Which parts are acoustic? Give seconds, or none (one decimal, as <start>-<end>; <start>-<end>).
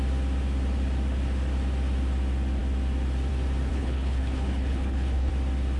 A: 0.0-3.7; 5.3-5.8